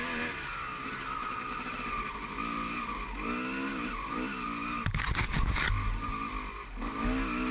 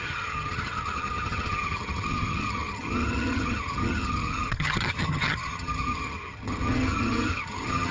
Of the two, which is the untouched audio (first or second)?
first